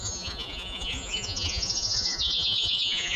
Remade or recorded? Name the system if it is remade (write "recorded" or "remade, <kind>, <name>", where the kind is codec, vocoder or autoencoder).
remade, vocoder, Vocos